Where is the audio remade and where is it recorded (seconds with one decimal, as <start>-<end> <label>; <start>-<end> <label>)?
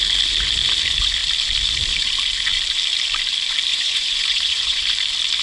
0.0-3.7 recorded; 3.7-4.8 remade; 4.8-5.4 recorded